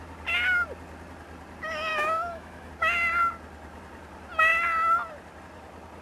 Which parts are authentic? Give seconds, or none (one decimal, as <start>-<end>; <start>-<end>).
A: 0.0-1.9; 2.7-6.0